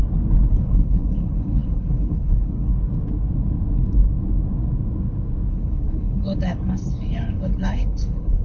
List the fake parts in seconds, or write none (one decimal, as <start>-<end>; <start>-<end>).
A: 0.5-2.7; 5.5-8.4